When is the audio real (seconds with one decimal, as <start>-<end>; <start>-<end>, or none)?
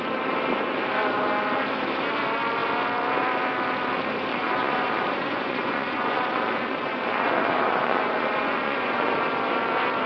0.0-4.3; 9.2-10.1